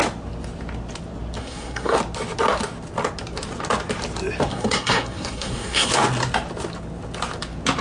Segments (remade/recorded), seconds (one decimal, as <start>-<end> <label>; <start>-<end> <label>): 0.0-1.4 recorded; 1.4-2.0 remade; 2.0-4.5 recorded; 4.5-5.9 remade; 5.9-7.8 recorded